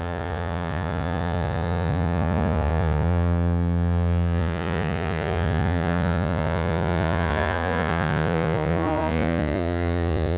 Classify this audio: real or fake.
fake